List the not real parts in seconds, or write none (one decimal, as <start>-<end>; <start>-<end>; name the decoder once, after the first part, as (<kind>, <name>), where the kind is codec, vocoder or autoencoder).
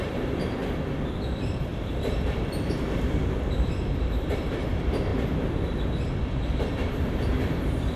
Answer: 0.0-0.6 (vocoder, BigVGAN v2); 1.1-5.1; 6.7-8.0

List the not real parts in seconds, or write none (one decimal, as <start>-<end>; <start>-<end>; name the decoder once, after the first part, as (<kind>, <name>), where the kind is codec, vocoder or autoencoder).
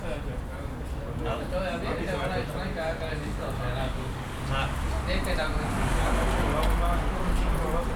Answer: 3.2-4.4 (codec, DAC)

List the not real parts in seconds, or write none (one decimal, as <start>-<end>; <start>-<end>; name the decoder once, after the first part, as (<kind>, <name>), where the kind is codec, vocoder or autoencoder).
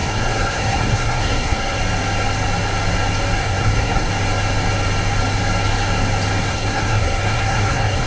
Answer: 0.0-1.8 (codec, SNAC); 3.4-4.1; 6.4-8.1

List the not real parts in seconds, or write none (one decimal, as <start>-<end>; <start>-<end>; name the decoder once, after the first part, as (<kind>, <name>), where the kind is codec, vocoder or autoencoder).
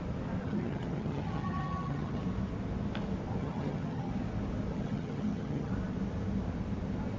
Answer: 0.4-2.2 (vocoder, HiFi-GAN); 3.4-4.1; 4.7-5.7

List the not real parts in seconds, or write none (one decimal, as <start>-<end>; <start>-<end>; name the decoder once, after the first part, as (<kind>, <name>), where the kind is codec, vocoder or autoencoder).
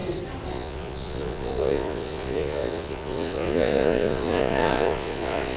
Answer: 0.5-5.6 (vocoder, Vocos)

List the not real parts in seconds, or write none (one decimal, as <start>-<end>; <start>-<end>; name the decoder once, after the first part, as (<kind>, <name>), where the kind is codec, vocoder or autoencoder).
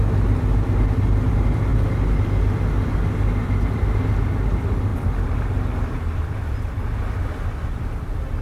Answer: none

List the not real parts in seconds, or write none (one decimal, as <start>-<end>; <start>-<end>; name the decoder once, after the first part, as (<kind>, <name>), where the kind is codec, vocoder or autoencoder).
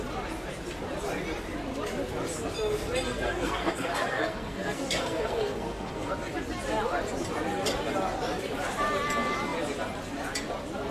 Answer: 3.1-6.1 (codec, SNAC)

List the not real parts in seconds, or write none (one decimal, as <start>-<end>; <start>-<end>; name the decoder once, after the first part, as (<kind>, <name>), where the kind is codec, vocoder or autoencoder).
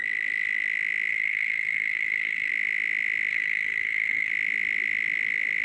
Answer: 1.1-2.5 (codec, SNAC); 3.3-4.3